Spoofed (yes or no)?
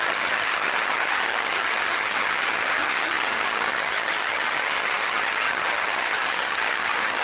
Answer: yes